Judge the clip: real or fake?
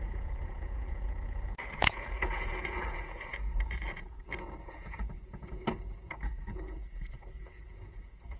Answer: fake